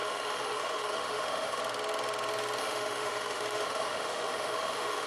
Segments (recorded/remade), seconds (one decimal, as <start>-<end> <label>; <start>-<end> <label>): 0.0-1.6 remade; 1.6-2.6 recorded; 2.6-5.1 remade